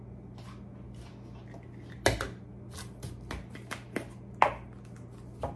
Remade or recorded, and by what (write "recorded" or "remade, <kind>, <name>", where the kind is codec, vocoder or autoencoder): recorded